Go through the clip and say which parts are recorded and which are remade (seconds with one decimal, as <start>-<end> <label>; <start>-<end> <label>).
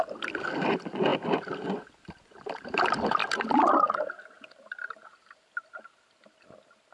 0.0-3.2 remade; 3.2-4.0 recorded; 4.0-6.9 remade